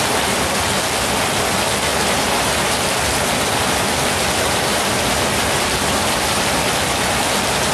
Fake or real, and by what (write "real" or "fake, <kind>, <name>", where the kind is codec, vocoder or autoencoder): real